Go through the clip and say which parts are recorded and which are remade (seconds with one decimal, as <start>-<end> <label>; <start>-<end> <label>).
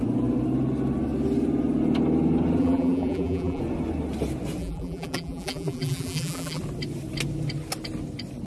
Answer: 0.0-2.6 recorded; 2.6-3.6 remade; 3.6-4.6 recorded; 4.6-6.6 remade; 6.6-8.5 recorded